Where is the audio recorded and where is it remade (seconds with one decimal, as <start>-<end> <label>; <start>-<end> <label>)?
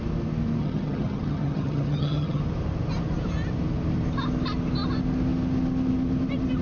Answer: 0.0-0.6 recorded; 0.6-2.4 remade; 2.4-6.6 recorded